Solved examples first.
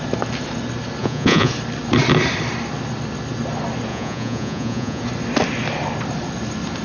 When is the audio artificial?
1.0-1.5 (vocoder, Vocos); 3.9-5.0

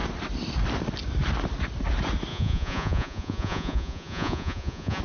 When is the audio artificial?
2.3-5.0 (vocoder, Vocos)

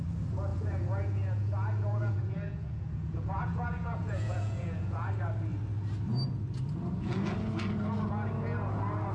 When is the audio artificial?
0.5-5.1 (vocoder, Vocos)